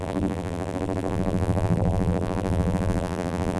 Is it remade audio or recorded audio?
remade